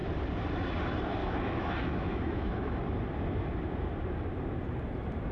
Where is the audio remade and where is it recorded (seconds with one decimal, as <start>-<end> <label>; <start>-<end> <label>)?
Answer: 0.0-1.2 recorded; 1.2-2.8 remade; 2.8-5.3 recorded